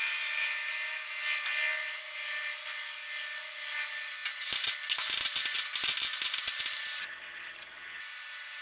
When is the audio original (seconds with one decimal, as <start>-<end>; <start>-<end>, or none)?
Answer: 0.0-7.0; 8.0-8.6